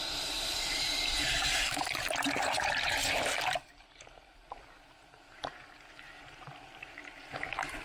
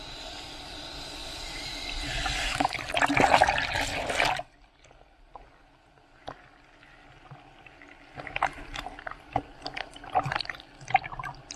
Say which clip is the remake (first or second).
first